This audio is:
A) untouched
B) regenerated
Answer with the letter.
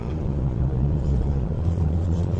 B